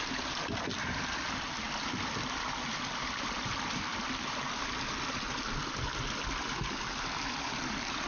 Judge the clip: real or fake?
real